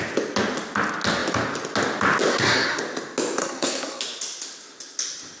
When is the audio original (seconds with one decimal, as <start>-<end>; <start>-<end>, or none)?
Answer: 0.0-2.3; 2.8-3.4; 4.0-5.4